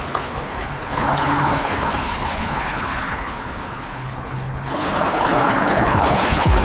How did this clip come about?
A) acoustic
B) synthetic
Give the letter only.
B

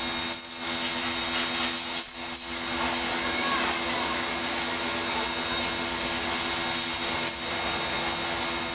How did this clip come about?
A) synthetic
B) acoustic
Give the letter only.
B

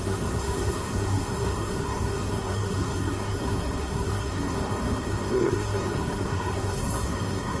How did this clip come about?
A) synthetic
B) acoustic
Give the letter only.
A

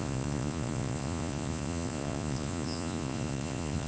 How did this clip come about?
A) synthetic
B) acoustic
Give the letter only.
A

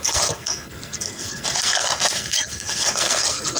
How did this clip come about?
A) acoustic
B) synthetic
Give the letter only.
B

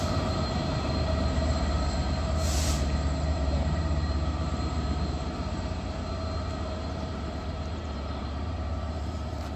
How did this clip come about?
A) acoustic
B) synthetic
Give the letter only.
B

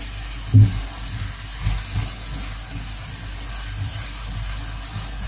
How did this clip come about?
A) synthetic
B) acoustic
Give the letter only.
B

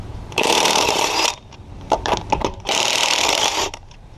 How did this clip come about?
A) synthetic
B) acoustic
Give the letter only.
A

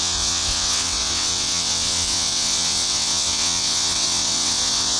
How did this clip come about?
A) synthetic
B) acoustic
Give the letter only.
A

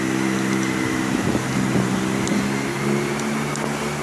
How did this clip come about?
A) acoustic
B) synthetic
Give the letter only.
A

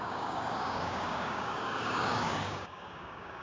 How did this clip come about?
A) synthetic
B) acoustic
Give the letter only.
A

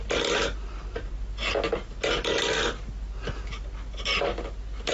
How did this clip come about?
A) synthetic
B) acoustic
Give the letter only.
B